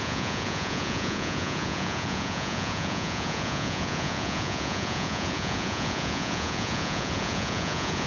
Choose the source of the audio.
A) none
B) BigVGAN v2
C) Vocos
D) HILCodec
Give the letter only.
C